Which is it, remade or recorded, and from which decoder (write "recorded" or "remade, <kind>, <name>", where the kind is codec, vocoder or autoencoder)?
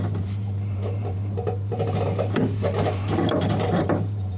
remade, vocoder, BigVGAN v2